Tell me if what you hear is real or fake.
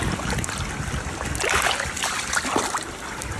real